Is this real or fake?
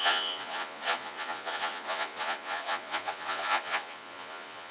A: fake